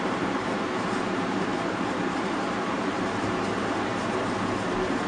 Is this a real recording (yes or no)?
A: no